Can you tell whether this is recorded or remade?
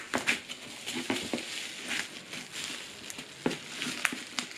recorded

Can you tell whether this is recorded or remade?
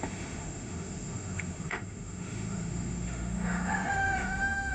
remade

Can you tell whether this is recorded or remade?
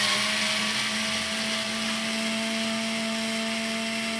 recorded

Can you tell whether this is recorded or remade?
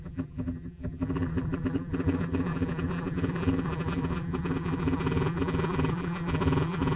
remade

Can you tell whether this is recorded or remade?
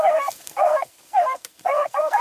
remade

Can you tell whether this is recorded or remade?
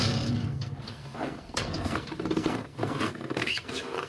remade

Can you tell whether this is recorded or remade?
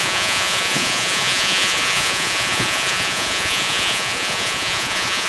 remade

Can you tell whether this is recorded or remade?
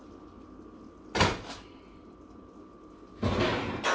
recorded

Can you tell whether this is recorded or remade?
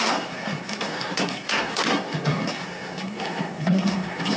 remade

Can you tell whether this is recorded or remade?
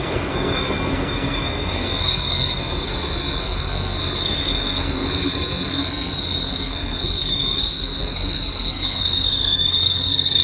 remade